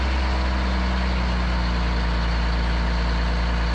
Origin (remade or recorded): recorded